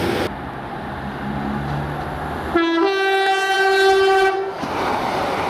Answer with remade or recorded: recorded